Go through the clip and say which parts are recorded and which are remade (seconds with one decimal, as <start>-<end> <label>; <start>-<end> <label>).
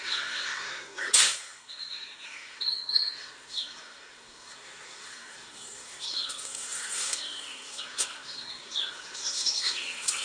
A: 0.0-10.2 remade